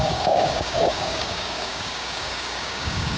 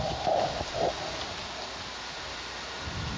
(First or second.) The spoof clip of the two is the first